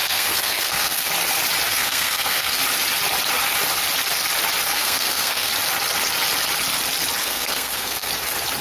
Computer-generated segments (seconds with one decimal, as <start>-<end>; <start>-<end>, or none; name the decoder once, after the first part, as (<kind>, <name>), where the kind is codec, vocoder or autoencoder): 0.0-1.1 (codec, SNAC); 1.7-2.6; 4.7-5.5; 7.2-8.1